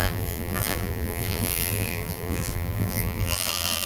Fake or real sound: fake